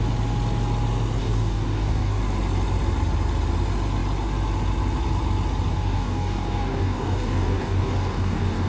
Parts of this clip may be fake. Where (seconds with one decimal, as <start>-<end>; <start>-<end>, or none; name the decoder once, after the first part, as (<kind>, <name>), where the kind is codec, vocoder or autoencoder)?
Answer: 1.2-2.2 (codec, DAC); 5.7-8.7